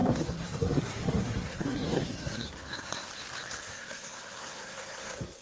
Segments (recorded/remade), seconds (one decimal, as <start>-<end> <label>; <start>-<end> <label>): 0.0-3.1 remade; 3.1-3.6 recorded; 3.6-5.4 remade